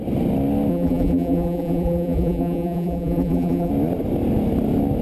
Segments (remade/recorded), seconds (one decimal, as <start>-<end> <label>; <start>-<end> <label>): 0.0-0.7 recorded; 0.7-3.7 remade; 3.7-5.0 recorded

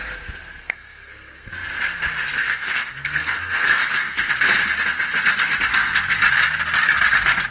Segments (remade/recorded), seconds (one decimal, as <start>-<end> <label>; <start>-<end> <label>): 0.0-0.6 recorded; 0.6-1.5 remade; 1.5-2.4 recorded; 2.4-4.3 remade; 4.3-5.7 recorded; 5.7-6.2 remade; 6.2-7.5 recorded